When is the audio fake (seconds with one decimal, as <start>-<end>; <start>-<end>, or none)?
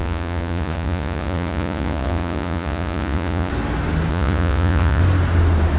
0.0-3.5; 4.1-5.0